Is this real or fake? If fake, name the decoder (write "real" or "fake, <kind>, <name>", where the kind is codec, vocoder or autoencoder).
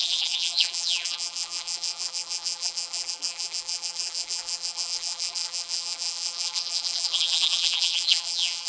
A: fake, vocoder, BigVGAN v2